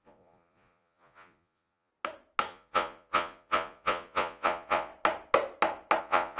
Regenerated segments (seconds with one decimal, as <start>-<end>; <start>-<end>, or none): 0.0-1.9; 2.5-4.9; 6.0-6.4